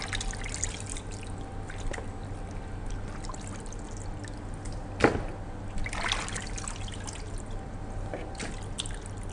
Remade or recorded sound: recorded